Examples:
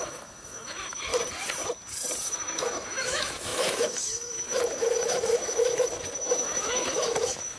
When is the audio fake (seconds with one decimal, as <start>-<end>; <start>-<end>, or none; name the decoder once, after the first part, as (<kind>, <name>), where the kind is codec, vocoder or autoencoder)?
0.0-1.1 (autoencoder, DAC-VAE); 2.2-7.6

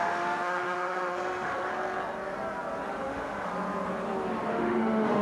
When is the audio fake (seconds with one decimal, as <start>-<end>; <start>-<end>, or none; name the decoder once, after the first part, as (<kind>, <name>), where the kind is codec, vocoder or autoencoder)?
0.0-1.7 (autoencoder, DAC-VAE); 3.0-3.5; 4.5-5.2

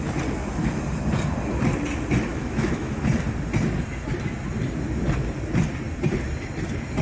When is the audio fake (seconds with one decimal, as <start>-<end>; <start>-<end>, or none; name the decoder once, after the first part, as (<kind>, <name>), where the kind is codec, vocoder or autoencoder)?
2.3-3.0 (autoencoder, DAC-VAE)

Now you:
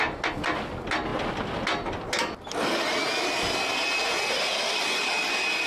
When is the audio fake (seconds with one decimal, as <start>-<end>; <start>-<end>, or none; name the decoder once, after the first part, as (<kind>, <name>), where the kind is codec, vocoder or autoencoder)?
none

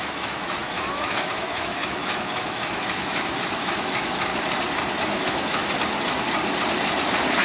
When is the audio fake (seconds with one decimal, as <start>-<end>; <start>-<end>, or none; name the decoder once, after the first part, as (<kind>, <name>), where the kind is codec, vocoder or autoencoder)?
0.0-4.3 (autoencoder, DAC-VAE); 5.0-5.6

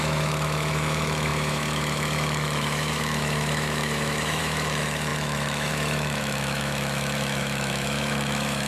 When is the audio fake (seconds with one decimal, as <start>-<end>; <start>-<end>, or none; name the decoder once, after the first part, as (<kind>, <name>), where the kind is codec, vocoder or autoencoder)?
0.0-8.7 (autoencoder, DAC-VAE)

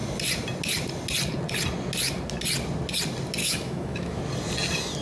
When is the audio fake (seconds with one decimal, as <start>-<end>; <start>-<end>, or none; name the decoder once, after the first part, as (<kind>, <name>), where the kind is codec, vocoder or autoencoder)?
3.4-4.2 (autoencoder, DAC-VAE)